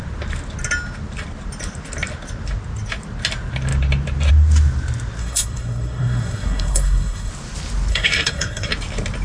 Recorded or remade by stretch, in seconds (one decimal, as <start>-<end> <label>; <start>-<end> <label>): 0.0-5.2 recorded; 5.2-7.3 remade; 7.3-7.9 recorded; 7.9-8.7 remade; 8.7-9.2 recorded